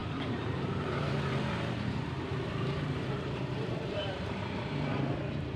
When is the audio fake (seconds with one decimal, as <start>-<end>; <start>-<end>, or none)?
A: 0.0-5.6